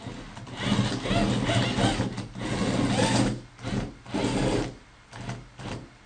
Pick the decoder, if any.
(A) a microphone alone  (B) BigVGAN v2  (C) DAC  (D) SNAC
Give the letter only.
A